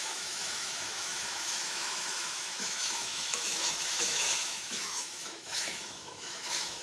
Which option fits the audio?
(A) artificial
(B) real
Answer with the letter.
A